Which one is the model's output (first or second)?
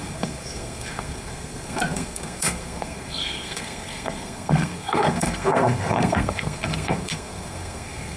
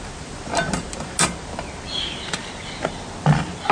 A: first